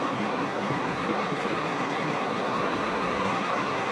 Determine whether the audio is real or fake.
fake